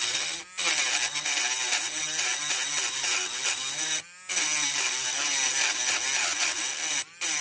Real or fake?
real